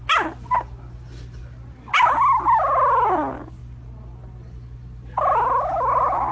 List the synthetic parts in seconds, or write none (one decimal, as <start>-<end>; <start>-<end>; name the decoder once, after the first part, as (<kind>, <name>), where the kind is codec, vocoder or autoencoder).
none

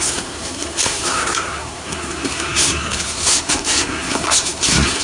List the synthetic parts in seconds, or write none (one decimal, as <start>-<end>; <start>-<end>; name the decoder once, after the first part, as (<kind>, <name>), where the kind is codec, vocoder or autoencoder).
0.0-5.0 (codec, SNAC)

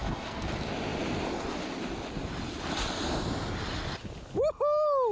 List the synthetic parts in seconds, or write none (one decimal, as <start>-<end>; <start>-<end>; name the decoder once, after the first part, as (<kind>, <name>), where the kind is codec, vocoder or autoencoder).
0.0-0.5 (codec, SNAC)

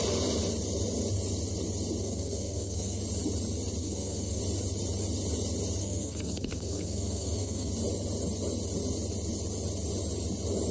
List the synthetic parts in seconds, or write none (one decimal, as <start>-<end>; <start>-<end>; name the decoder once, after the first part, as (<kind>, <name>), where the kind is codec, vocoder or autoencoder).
2.0-3.0 (codec, SNAC); 3.8-4.4; 5.8-7.7

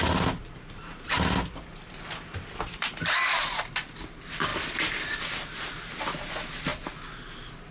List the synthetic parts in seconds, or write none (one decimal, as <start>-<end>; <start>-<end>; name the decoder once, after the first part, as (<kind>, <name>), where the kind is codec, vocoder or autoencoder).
none

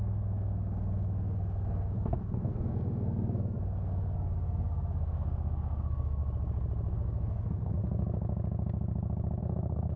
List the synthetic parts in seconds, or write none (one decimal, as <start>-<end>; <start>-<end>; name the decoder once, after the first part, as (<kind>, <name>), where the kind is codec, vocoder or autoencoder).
0.0-6.2 (codec, SNAC); 6.9-7.8; 9.4-10.0

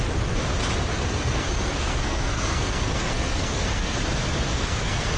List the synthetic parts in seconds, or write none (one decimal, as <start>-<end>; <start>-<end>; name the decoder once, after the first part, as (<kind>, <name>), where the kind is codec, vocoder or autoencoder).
0.9-4.0 (codec, SNAC); 4.5-5.2

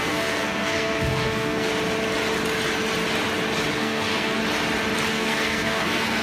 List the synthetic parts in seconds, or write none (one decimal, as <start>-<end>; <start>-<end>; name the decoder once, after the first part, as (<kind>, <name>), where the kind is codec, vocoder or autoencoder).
0.0-1.7 (codec, SNAC); 3.7-4.4; 5.1-6.2